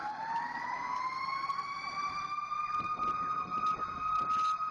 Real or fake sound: real